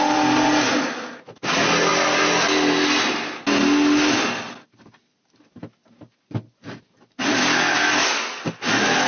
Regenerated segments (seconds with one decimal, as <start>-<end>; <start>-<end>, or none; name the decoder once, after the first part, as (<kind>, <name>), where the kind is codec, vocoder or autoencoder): none